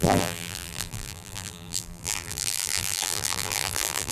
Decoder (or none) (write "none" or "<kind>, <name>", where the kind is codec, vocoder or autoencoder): vocoder, BigVGAN v2